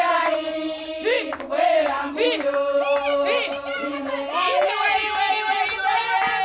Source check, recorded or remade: recorded